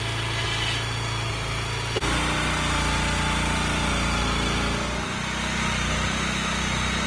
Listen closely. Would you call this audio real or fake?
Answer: real